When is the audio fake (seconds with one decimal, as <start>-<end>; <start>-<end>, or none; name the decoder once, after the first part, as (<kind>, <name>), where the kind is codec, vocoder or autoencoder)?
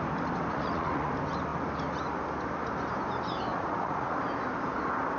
0.5-1.1 (vocoder, Vocos); 3.5-4.2